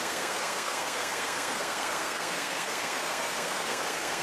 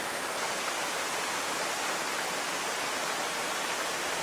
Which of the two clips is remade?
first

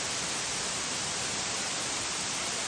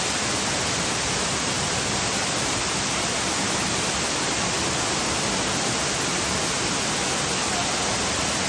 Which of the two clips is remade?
first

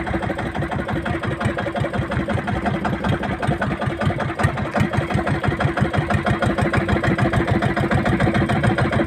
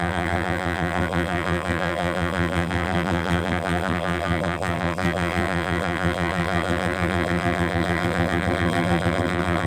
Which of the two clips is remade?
second